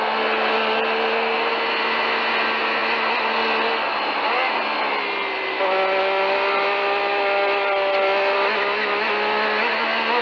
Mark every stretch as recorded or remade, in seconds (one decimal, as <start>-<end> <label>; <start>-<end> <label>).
0.0-10.2 recorded